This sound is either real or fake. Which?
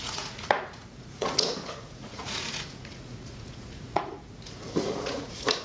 fake